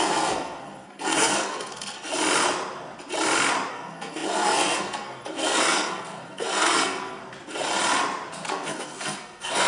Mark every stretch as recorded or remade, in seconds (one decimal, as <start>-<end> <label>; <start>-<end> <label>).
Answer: 0.0-2.1 remade; 2.1-3.7 recorded; 3.7-7.2 remade; 7.2-8.5 recorded; 8.5-9.7 remade